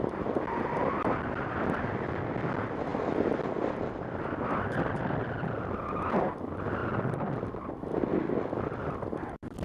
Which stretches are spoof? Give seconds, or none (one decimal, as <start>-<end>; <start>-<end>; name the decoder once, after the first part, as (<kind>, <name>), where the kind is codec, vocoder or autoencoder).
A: none